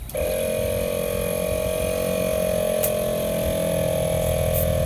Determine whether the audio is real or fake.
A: real